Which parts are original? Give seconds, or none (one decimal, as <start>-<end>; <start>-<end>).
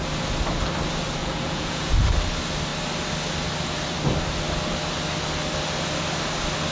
0.0-1.2; 1.9-6.7